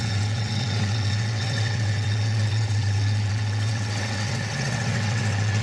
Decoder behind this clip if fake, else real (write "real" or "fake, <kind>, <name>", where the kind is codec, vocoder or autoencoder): fake, vocoder, WaveNeXt